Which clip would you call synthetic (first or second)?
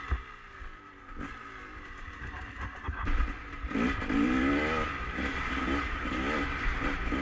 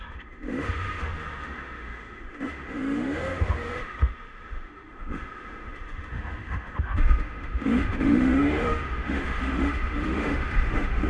second